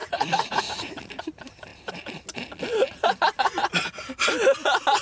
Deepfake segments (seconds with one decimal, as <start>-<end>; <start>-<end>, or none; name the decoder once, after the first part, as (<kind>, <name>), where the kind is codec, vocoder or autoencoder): 0.0-0.9 (vocoder, Vocos)